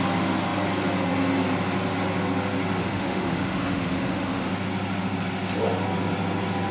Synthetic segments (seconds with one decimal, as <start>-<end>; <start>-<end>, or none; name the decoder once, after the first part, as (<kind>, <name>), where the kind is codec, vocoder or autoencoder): 2.8-4.5 (autoencoder, DAC-VAE)